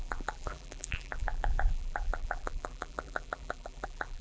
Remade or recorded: remade